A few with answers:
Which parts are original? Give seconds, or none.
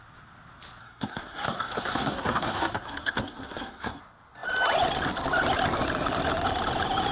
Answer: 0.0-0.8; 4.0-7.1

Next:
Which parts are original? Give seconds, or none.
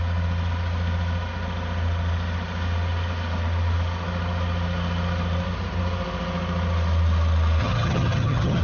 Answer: 0.0-7.6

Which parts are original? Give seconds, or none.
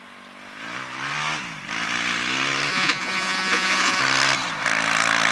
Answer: 0.0-2.7; 4.0-5.3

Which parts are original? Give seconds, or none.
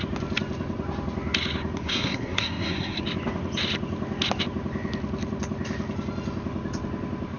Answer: 0.0-1.8; 3.0-7.4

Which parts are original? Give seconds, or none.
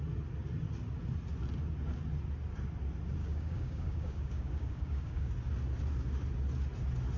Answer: 0.0-3.2; 5.3-7.2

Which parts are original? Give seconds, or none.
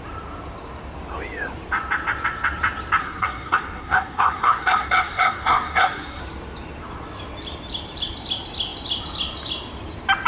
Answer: 0.0-3.0; 6.2-10.3